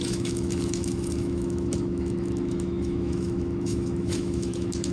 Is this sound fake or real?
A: fake